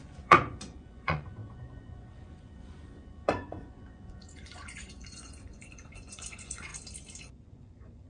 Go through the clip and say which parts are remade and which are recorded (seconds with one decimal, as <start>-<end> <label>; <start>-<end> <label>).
0.0-6.7 remade; 6.7-7.2 recorded; 7.2-8.1 remade